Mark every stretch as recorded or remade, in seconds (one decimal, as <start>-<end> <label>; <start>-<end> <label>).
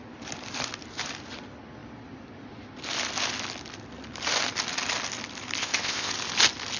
0.0-5.6 recorded; 5.6-6.1 remade; 6.1-6.8 recorded